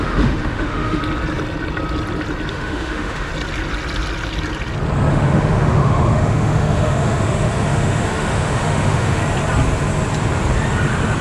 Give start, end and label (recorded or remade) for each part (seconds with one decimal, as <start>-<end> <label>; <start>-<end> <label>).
0.0-1.0 remade; 1.0-2.5 recorded; 2.5-3.3 remade; 3.3-5.1 recorded; 5.1-9.2 remade; 9.2-11.2 recorded